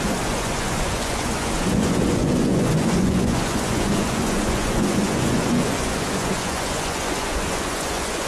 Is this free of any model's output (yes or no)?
no